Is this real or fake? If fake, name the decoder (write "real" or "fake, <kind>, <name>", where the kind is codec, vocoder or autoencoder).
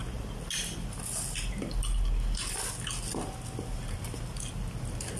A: real